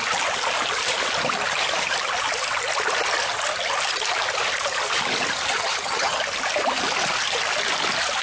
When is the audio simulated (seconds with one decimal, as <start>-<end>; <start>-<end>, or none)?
5.5-6.2

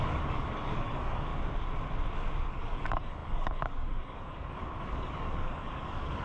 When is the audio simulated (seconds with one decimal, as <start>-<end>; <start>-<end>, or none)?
0.0-1.3; 2.5-6.2

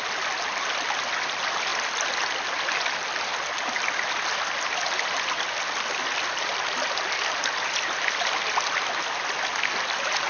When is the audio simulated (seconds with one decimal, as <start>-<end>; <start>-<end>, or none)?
none

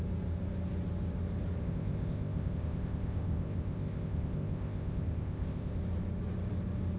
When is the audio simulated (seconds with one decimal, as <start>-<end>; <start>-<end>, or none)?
1.6-5.8

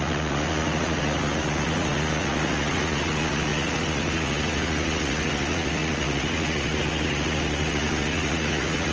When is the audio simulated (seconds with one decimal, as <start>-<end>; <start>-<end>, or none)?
0.0-8.9